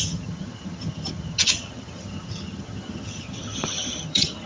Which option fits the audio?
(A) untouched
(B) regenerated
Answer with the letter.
B